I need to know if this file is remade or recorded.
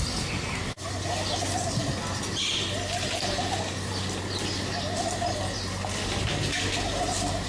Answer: recorded